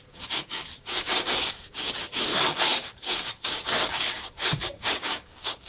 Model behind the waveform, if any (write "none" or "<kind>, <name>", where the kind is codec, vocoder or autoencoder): codec, DAC